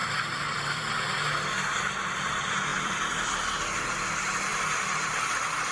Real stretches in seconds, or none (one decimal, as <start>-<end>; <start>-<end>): 0.8-2.7; 3.5-5.7